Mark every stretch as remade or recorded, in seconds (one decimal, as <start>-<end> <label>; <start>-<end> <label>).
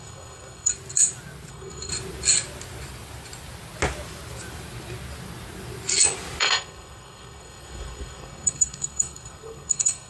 0.0-0.7 remade; 0.7-1.5 recorded; 1.5-1.9 remade; 1.9-6.4 recorded; 6.4-10.1 remade